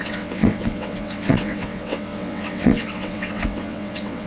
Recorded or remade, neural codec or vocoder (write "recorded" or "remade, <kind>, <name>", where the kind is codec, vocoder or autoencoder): remade, vocoder, WaveNeXt